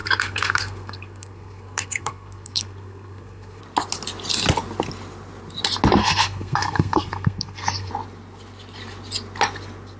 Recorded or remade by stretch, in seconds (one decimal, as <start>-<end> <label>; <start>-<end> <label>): 0.0-3.6 remade; 3.6-6.0 recorded; 6.0-7.9 remade; 7.9-10.0 recorded